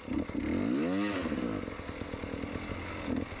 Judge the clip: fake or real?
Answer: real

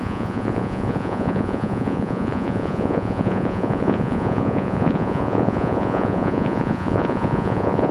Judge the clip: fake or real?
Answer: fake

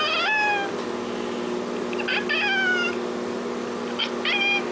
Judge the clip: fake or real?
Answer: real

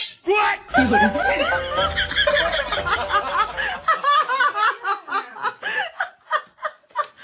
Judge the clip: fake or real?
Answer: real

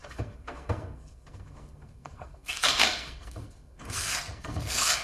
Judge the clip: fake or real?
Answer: fake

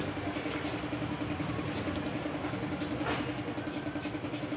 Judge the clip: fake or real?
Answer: real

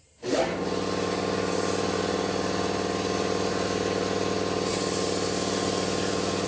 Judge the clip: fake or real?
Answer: real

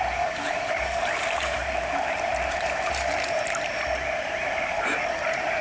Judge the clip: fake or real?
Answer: fake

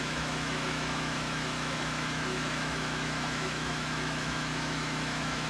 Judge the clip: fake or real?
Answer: fake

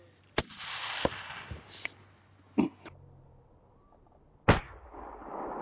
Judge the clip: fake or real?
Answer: real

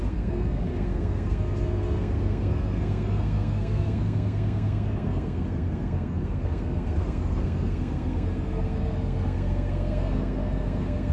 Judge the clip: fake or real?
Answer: fake